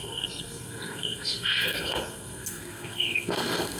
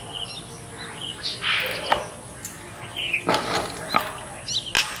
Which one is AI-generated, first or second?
first